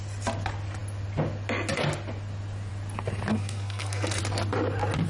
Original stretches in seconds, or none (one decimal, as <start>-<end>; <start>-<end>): 0.0-3.3; 4.2-5.1